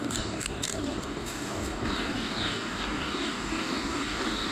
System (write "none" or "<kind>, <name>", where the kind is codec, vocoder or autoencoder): codec, DAC